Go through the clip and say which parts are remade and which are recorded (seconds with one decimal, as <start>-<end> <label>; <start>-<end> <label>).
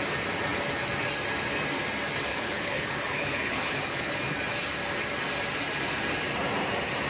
0.0-2.3 recorded; 2.3-4.1 remade; 4.1-7.1 recorded